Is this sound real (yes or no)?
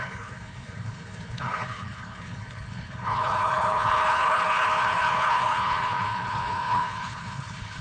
no